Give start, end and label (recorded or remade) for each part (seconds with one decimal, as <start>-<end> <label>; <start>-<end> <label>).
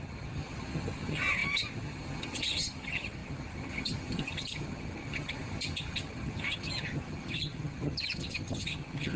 0.0-9.2 remade